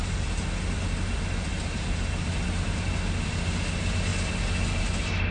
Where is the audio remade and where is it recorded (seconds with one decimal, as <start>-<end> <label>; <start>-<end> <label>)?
0.0-5.3 recorded